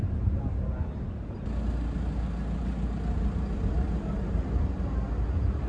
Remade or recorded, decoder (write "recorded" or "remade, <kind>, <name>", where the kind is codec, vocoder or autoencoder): recorded